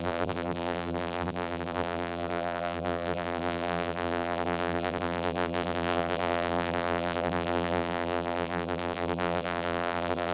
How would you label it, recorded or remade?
remade